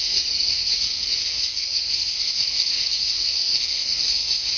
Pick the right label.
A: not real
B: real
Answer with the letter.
A